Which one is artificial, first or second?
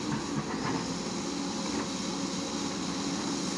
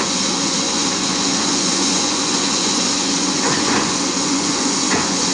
second